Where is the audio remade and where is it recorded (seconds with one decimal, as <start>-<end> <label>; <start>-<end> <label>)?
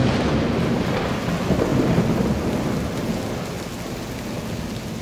0.0-5.0 recorded